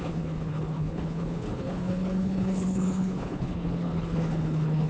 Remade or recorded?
remade